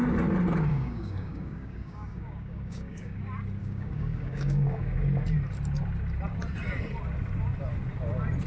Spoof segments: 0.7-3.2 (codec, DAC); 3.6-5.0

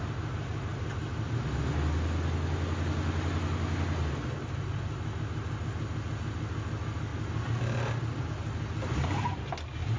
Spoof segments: none

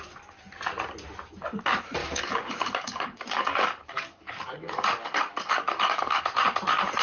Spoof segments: 2.0-6.2 (codec, DAC)

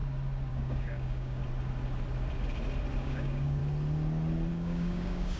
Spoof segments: 0.5-1.4 (codec, DAC); 3.0-3.6; 4.5-5.4

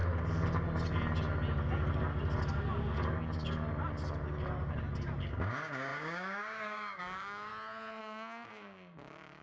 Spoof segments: 5.2-7.5 (codec, DAC); 8.0-9.4

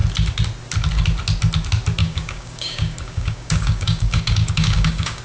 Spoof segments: 2.0-5.2 (codec, DAC)

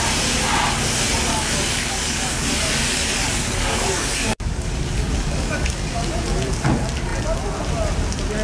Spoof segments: 1.3-6.1 (codec, DAC)